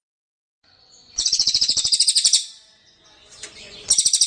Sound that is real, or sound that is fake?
fake